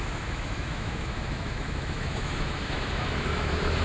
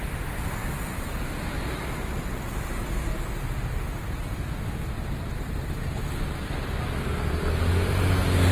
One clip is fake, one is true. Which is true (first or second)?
second